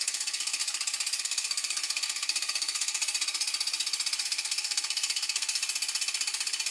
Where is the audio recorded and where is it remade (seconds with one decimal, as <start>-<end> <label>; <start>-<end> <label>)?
0.0-0.6 remade; 0.6-1.2 recorded; 1.2-3.0 remade; 3.0-4.2 recorded; 4.2-5.6 remade; 5.6-6.7 recorded